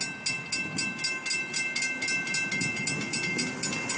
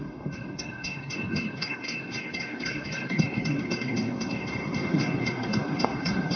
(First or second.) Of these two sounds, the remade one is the second